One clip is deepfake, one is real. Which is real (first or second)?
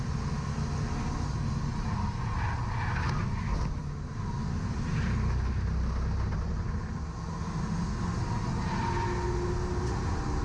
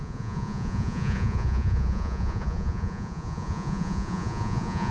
first